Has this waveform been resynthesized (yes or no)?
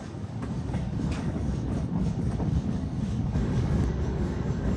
yes